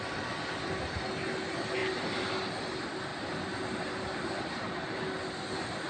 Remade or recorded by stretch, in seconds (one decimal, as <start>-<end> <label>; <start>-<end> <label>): 0.0-1.8 recorded; 1.8-2.3 remade; 2.3-3.1 recorded; 3.1-4.8 remade; 4.8-5.9 recorded